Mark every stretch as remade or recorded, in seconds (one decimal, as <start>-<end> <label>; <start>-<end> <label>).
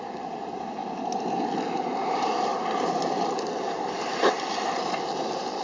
0.0-0.8 remade; 0.8-1.7 recorded; 1.7-5.6 remade